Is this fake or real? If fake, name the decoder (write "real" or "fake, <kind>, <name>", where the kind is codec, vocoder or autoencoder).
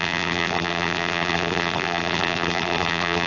fake, vocoder, BigVGAN v2